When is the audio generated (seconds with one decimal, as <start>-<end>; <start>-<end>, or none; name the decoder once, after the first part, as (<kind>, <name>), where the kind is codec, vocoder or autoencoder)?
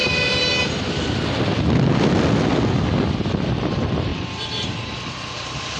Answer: none